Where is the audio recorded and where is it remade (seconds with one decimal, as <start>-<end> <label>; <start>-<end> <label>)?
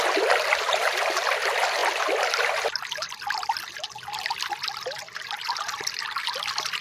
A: 0.0-6.8 recorded